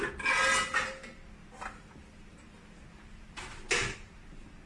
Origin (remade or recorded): recorded